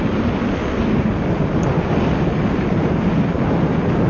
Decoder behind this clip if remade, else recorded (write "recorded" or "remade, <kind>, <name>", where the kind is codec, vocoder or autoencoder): remade, vocoder, BigVGAN v2